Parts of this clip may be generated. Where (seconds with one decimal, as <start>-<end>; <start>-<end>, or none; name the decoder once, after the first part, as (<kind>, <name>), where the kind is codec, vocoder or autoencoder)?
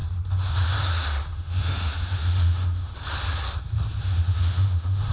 1.3-2.9 (autoencoder, DAC-VAE); 4.0-5.1